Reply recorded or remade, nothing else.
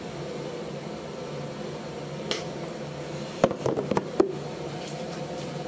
recorded